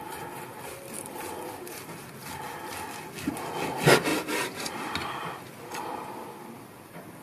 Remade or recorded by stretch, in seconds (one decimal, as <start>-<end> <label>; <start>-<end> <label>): 0.0-0.7 recorded; 0.7-1.6 remade; 1.6-4.1 recorded; 4.1-5.1 remade; 5.1-7.2 recorded